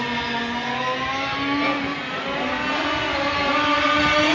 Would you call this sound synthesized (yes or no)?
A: no